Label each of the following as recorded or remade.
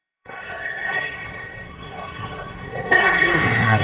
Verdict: remade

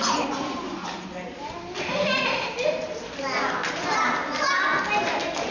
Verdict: recorded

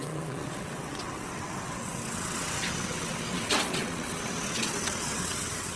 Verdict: remade